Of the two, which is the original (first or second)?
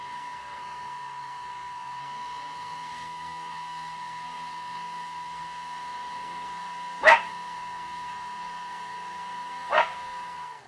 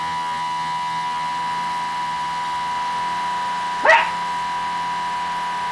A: second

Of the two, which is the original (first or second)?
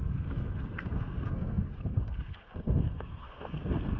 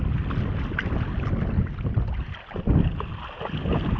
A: second